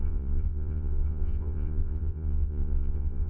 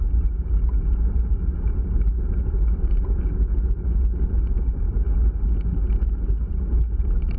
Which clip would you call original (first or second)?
second